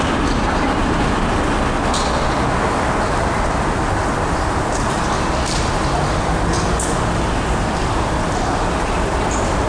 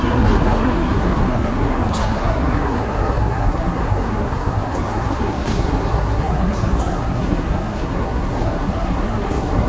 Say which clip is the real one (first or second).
first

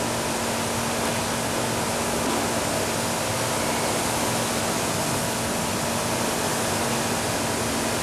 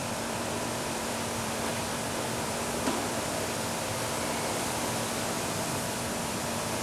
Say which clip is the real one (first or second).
first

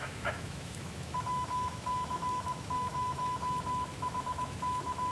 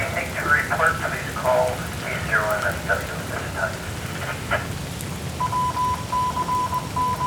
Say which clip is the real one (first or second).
second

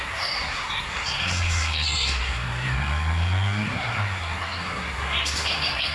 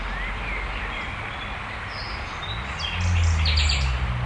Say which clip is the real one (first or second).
second